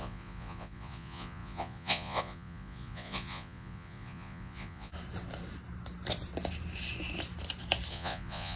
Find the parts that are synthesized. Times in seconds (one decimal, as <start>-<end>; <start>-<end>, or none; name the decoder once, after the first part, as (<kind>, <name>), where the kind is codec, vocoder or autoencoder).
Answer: 0.0-4.9 (vocoder, Vocos); 7.9-8.6